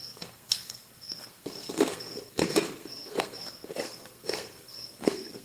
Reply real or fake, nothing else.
fake